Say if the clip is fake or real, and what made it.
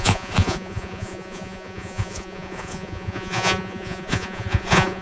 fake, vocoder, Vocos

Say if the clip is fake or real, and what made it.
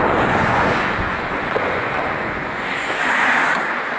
fake, vocoder, Vocos